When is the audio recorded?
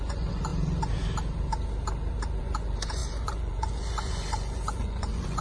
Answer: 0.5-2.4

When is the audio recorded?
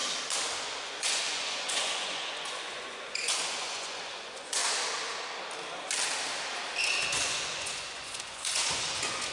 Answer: 0.0-0.6; 4.6-7.0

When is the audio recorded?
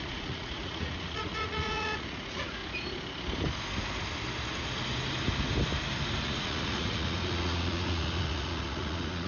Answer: 2.6-6.2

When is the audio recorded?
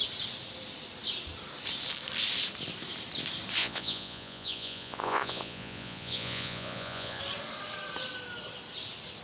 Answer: 0.0-3.6; 7.2-9.2